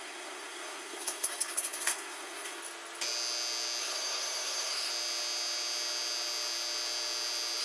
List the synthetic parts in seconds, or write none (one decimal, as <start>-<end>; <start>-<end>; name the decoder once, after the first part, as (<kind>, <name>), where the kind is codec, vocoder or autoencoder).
0.0-2.6 (codec, SNAC); 3.8-4.9